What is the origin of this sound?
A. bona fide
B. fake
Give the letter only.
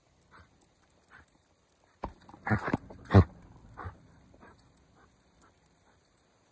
B